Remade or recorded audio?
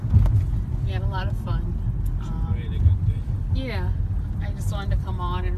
recorded